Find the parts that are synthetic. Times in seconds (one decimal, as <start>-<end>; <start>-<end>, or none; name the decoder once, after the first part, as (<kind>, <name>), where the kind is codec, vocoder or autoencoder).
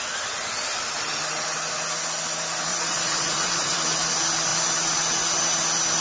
2.7-3.8 (vocoder, Vocos)